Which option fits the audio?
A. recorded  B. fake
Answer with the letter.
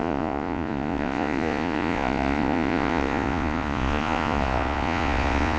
B